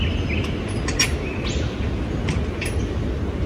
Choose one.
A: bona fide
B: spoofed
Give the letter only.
A